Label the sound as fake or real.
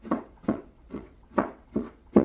fake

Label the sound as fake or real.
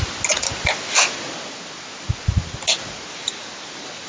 real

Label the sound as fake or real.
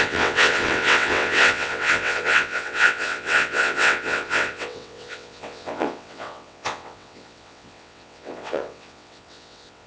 fake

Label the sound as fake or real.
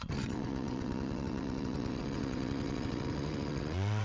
fake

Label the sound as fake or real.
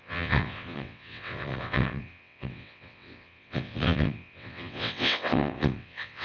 fake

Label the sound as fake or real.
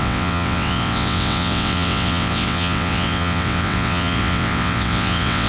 fake